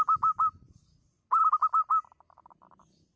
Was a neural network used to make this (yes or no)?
no